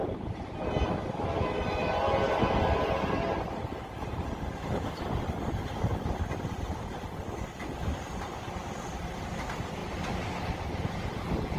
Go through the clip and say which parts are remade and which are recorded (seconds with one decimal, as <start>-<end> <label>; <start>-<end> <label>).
0.0-11.6 recorded